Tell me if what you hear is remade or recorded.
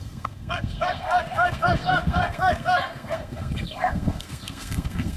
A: remade